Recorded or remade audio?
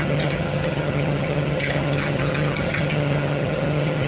remade